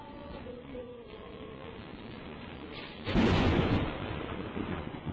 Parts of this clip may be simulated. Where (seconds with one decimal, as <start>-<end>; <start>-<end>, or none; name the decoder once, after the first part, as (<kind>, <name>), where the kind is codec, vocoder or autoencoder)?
0.0-5.1 (vocoder, Vocos)